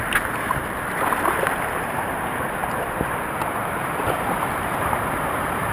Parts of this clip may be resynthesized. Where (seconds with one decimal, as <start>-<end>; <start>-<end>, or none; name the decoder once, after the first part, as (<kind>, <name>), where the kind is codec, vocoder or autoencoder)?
0.0-2.6 (vocoder, BigVGAN v2); 3.5-5.7

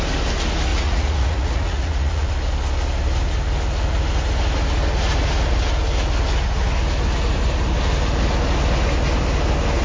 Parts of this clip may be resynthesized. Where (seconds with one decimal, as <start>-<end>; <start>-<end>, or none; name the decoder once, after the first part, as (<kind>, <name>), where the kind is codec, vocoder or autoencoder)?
0.7-2.3 (vocoder, Vocos)

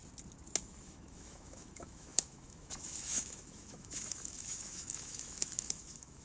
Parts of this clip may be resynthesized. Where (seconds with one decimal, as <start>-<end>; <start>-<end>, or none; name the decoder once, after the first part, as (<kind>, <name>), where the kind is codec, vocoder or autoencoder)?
0.6-6.2 (autoencoder, DAC-VAE)

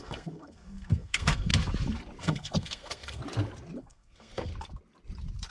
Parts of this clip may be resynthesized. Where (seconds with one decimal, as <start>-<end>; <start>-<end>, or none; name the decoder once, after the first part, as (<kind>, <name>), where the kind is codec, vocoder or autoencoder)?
0.0-1.5 (codec, SNAC); 2.2-3.2; 3.8-4.5

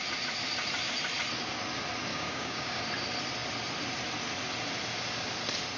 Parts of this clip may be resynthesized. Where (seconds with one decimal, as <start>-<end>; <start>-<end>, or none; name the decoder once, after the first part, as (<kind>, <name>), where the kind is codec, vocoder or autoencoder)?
2.1-2.8 (codec, DAC)